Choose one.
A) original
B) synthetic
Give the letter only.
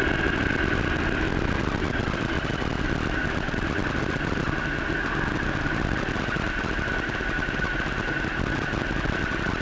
A